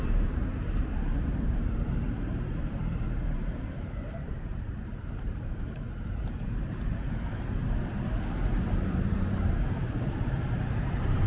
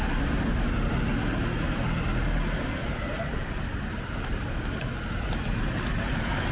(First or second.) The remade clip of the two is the first